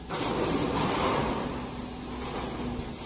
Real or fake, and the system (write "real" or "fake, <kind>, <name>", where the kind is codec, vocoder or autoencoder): real